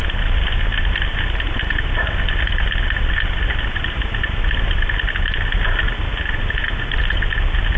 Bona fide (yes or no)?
yes